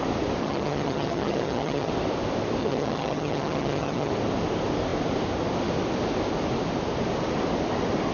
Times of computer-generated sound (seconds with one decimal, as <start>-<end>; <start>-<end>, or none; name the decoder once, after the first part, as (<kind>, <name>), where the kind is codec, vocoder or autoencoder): 0.4-1.9 (vocoder, HiFi-GAN); 2.6-4.1